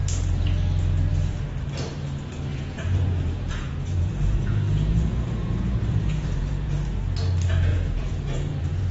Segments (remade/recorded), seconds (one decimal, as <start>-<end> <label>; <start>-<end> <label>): 0.0-2.5 recorded; 2.5-6.7 remade; 6.7-7.7 recorded; 7.7-8.9 remade